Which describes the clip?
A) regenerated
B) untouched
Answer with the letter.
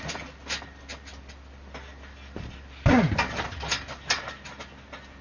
B